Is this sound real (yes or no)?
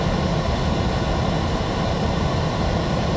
yes